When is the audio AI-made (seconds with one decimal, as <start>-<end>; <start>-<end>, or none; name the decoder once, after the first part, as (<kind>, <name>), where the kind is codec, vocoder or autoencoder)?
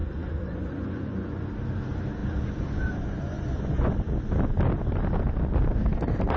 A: 0.0-1.5 (vocoder, Vocos); 2.2-3.9